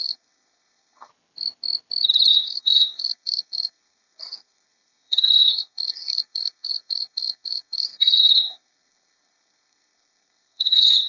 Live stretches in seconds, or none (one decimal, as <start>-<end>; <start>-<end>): 1.1-2.3

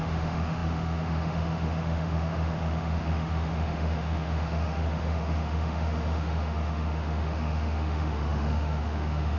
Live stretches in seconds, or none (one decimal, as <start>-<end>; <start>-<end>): none

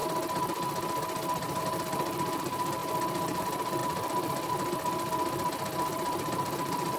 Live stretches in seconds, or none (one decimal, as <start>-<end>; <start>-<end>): 0.0-1.6

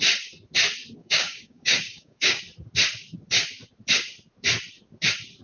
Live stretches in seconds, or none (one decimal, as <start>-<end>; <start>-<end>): 0.0-1.0; 2.4-5.4